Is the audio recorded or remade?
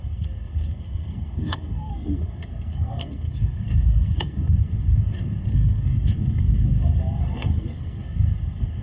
remade